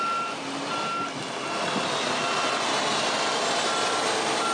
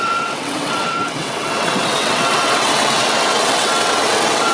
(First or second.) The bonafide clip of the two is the first